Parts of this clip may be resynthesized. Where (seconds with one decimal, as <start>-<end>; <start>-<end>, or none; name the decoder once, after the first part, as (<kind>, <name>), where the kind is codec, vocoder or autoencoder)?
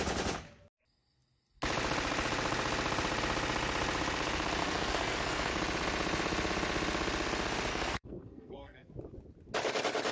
4.6-5.5 (codec, SNAC); 7.7-8.9